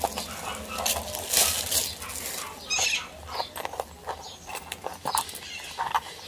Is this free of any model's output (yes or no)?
yes